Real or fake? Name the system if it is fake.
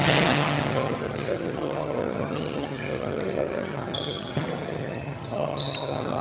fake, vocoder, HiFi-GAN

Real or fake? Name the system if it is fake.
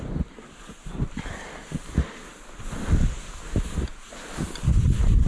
real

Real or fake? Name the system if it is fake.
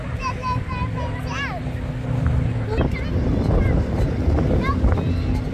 real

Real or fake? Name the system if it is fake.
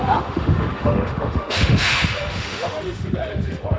fake, autoencoder, DAC-VAE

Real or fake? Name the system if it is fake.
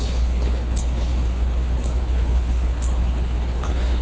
fake, codec, HILCodec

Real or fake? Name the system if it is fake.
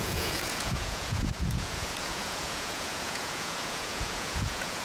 fake, vocoder, Vocos